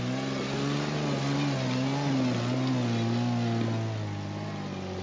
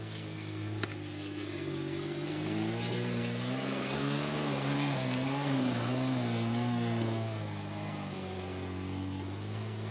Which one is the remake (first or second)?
second